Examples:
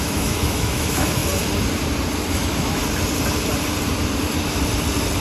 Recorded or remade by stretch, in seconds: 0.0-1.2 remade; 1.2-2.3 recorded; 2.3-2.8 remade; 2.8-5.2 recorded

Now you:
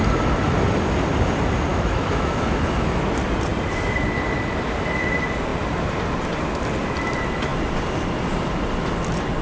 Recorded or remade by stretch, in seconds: 0.0-1.7 recorded; 1.7-3.0 remade; 3.0-9.4 recorded

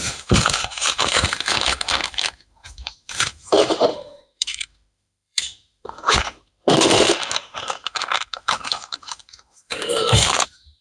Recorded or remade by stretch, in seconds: 0.0-10.8 remade